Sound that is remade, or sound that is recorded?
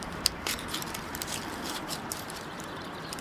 remade